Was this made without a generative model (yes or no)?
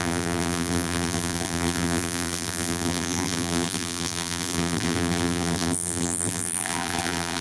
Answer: no